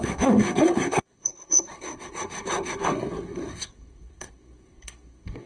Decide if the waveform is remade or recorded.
remade